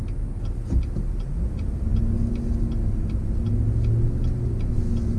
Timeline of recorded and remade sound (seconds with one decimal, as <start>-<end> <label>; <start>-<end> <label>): 0.0-5.2 recorded